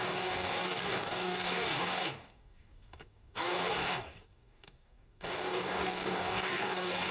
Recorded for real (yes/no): no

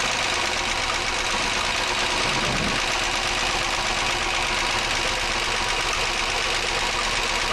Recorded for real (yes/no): yes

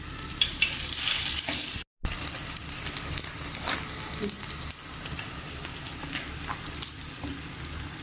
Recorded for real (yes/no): yes